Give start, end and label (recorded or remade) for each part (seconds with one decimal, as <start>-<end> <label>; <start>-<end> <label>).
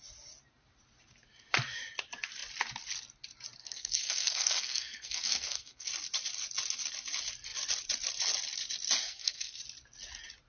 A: 0.0-3.6 recorded; 3.6-5.9 remade; 5.9-9.0 recorded; 9.0-9.6 remade; 9.6-10.5 recorded